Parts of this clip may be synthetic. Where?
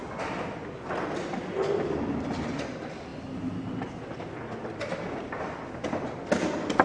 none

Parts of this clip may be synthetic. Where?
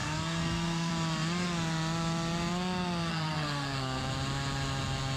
0.0-0.9 (codec, SNAC); 3.1-4.0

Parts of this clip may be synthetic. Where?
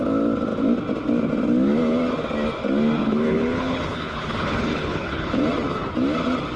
3.0-5.4 (codec, HILCodec)